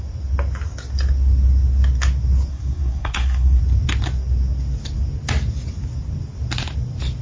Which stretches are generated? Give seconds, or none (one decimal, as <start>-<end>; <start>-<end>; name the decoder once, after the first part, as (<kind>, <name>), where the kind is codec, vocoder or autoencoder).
2.5-3.6 (codec, SNAC)